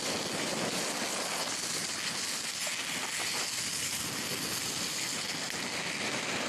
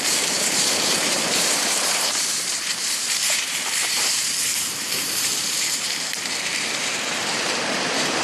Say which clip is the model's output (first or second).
second